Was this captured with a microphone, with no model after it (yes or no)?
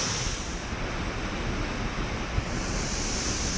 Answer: yes